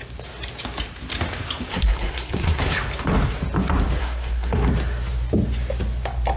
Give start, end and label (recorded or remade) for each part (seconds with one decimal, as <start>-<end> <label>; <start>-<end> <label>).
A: 0.0-1.7 recorded; 1.7-2.6 remade; 2.6-4.0 recorded; 4.0-4.7 remade; 4.7-6.4 recorded